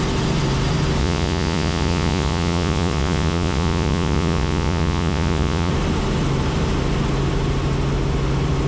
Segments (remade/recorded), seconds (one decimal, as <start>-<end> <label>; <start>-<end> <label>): 0.0-1.0 recorded; 1.0-5.7 remade; 5.7-8.7 recorded